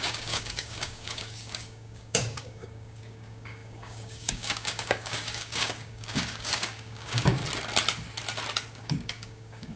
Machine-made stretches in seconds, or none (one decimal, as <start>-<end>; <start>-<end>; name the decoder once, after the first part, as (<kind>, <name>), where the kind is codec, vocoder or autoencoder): 0.0-7.4 (codec, DAC); 8.7-9.8